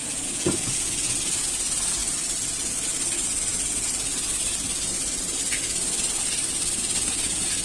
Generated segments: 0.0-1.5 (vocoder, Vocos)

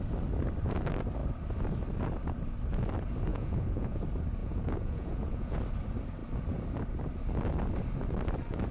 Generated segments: 3.3-4.0 (vocoder, Vocos); 4.4-5.6